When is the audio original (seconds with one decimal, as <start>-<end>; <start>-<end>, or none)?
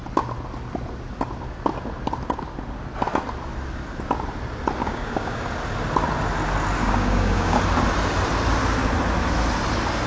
0.0-4.8; 5.4-6.8; 7.6-10.1